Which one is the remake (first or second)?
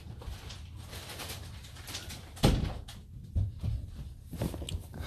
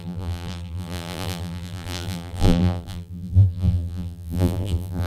second